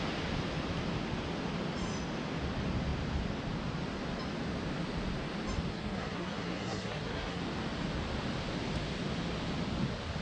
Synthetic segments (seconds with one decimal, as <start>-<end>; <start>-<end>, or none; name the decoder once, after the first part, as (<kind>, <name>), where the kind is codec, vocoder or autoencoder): 5.7-7.4 (codec, SNAC)